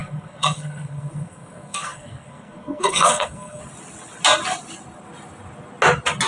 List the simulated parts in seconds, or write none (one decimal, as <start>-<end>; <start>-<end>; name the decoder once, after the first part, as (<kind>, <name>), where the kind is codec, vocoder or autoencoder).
0.0-3.6 (codec, SNAC)

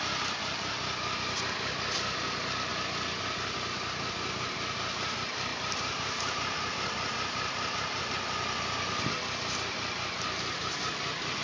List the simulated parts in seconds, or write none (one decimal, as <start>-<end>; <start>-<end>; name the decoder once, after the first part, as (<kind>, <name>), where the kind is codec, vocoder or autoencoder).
5.5-8.0 (vocoder, BigVGAN v2)

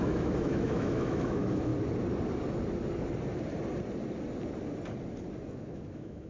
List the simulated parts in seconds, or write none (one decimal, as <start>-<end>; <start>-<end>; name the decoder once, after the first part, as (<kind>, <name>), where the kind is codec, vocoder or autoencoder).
0.0-1.7 (autoencoder, DAC-VAE); 5.5-6.3

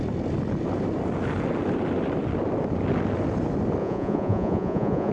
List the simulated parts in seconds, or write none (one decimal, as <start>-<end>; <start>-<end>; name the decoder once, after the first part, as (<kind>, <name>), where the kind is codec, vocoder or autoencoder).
3.8-5.1 (vocoder, Vocos)

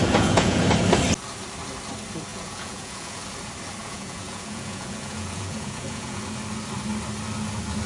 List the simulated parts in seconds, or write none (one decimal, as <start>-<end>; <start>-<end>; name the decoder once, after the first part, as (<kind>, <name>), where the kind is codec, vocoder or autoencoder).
0.0-0.6 (vocoder, Vocos); 2.3-3.2; 3.8-6.2